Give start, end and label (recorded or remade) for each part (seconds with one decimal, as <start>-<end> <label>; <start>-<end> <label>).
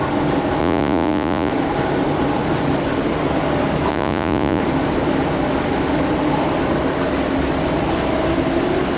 0.0-0.6 recorded; 0.6-1.5 remade; 1.5-3.9 recorded; 3.9-4.6 remade; 4.6-9.0 recorded